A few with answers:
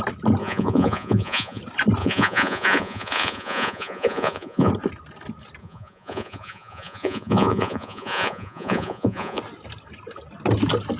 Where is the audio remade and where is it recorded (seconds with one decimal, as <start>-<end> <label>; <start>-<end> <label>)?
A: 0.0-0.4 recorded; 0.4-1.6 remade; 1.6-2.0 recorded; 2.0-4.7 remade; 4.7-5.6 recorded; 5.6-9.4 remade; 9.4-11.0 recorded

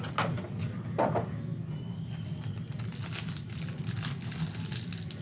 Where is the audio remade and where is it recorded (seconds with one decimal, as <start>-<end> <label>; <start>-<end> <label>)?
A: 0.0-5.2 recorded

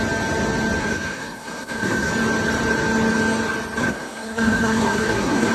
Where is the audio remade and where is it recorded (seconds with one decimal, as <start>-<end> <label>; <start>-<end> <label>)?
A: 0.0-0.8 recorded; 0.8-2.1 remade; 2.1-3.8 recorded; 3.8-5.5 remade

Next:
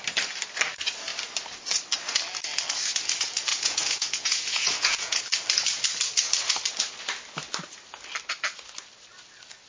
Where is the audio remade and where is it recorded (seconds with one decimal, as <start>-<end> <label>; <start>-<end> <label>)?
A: 0.0-3.5 recorded; 3.5-5.2 remade; 5.2-9.7 recorded

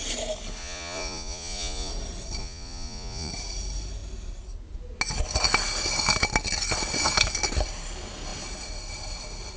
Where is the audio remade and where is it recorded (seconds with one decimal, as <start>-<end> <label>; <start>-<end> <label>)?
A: 0.0-0.6 recorded; 0.6-1.9 remade; 1.9-2.4 recorded; 2.4-3.3 remade; 3.3-9.6 recorded

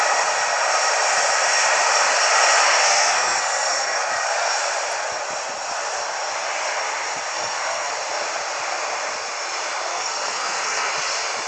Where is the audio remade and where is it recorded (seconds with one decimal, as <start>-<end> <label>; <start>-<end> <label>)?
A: 0.0-2.8 recorded; 2.8-4.1 remade; 4.1-7.3 recorded; 7.3-7.9 remade; 7.9-9.9 recorded; 9.9-10.9 remade; 10.9-11.5 recorded